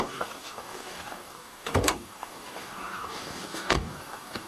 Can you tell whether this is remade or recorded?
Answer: remade